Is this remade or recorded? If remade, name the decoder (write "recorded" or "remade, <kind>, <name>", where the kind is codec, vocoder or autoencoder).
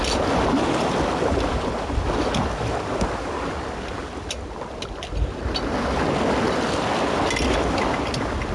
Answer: recorded